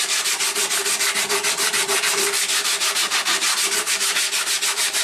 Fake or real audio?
fake